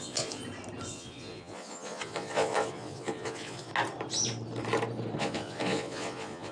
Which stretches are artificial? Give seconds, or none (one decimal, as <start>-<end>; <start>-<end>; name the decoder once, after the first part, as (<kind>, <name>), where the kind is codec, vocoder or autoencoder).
0.0-0.4 (vocoder, Vocos); 0.9-3.7; 5.2-6.5